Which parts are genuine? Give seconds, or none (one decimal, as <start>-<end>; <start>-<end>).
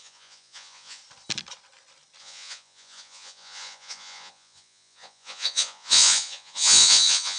1.0-2.2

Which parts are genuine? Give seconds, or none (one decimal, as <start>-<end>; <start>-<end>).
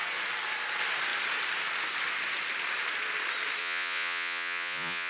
0.0-3.6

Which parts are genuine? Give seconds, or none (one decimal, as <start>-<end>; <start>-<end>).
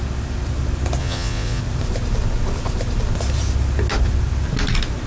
0.0-1.0; 1.6-5.1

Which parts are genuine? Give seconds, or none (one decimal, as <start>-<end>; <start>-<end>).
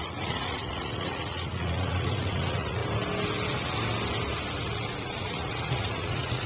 2.8-5.2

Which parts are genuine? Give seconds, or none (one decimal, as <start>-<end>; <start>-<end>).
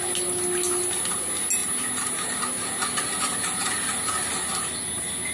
0.0-5.3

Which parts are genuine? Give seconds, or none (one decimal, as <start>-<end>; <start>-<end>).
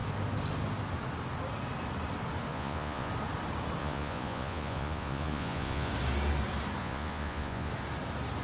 0.0-2.5; 3.1-3.8; 5.9-6.8; 7.7-8.4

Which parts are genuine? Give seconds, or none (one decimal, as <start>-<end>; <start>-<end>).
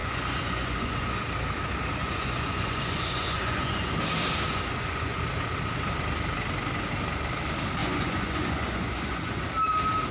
1.2-2.0; 3.9-4.5; 5.2-7.8; 9.4-10.1